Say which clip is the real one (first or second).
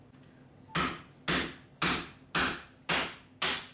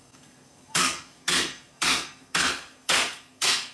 first